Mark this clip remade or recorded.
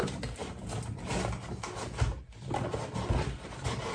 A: recorded